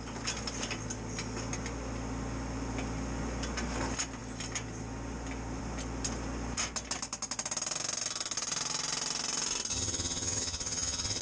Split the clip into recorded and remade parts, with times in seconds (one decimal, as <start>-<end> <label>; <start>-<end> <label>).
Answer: 0.0-9.7 recorded; 9.7-11.2 remade